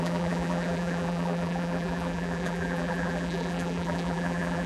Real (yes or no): no